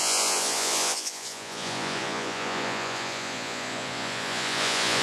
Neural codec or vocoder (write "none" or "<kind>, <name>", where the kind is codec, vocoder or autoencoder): vocoder, Vocos